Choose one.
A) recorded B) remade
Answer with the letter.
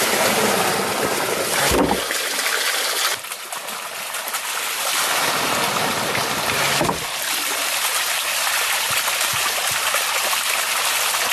A